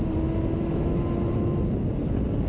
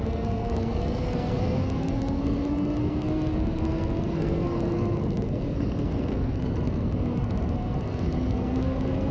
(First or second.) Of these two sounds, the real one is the first